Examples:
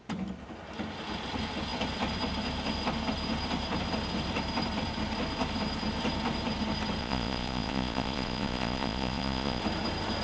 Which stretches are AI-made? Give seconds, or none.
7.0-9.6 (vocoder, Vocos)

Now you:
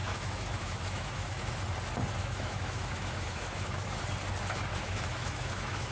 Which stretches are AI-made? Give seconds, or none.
0.0-1.5 (autoencoder, DAC-VAE); 2.2-4.0; 4.7-5.9

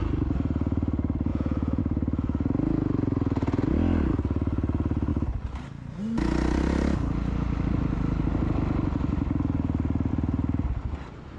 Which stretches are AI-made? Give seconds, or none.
1.3-1.8 (vocoder, Vocos)

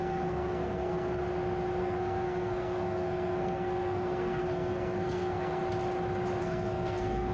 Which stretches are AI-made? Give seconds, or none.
0.0-1.2 (codec, SNAC); 1.8-5.6; 6.4-7.3

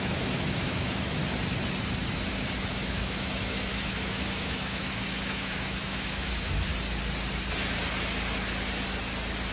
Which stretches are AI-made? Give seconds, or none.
0.0-1.2 (autoencoder, DAC-VAE); 2.7-6.7